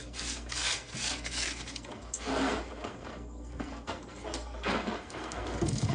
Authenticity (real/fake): fake